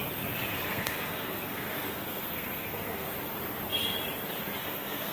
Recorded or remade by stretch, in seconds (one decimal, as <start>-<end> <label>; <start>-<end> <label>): 0.0-0.7 recorded; 0.7-3.1 remade; 3.1-4.6 recorded; 4.6-5.1 remade